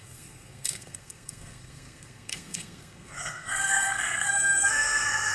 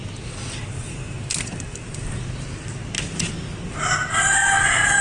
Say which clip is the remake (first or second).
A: first